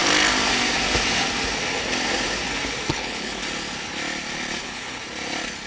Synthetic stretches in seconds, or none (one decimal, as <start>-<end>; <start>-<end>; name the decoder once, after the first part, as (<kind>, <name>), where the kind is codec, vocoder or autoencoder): 2.9-3.4 (codec, HILCodec); 4.6-5.0